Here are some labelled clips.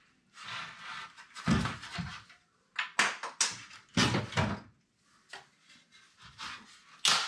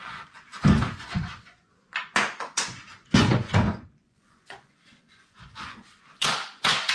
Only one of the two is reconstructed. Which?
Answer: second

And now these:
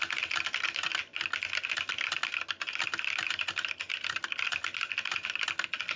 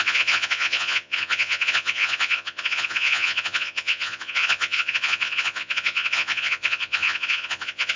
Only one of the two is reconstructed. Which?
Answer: second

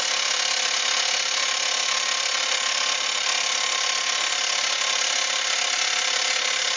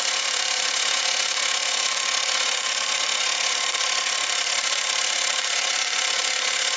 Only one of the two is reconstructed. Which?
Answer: second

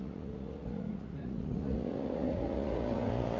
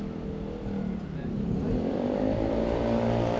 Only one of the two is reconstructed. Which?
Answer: first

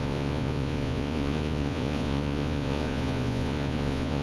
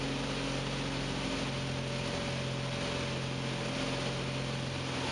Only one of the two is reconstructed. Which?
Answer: first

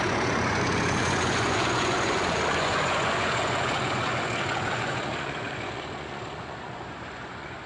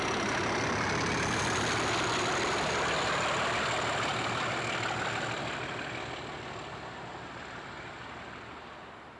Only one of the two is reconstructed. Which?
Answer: first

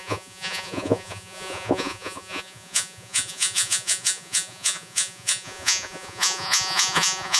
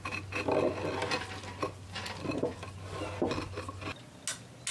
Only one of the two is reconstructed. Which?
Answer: first